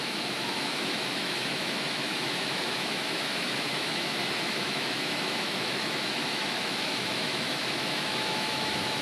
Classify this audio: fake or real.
fake